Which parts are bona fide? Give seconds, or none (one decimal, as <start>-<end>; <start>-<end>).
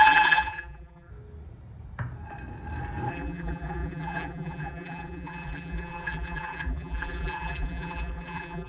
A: 1.1-3.1